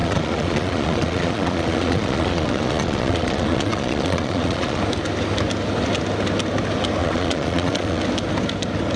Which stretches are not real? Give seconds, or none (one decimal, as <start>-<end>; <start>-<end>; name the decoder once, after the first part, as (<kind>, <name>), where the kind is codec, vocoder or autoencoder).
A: 0.0-4.8 (vocoder, Vocos); 7.0-8.0